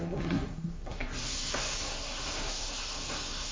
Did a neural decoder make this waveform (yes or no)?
yes